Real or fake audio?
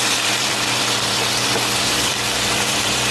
fake